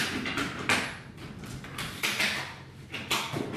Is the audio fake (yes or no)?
no